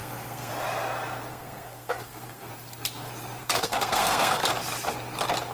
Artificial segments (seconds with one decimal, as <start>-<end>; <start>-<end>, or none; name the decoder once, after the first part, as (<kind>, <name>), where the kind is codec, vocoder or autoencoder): 0.0-0.5 (codec, SNAC); 1.3-2.5; 3.4-4.5